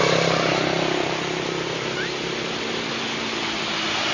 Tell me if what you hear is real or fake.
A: real